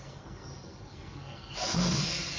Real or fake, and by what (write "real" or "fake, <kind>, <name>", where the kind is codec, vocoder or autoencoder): fake, codec, SNAC